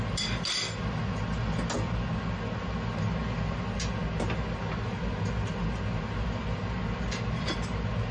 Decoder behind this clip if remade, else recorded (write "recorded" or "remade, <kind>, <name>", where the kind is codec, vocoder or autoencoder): recorded